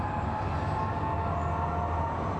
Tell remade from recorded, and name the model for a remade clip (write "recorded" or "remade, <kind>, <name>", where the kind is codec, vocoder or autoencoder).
recorded